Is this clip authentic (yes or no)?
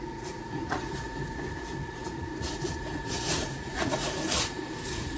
no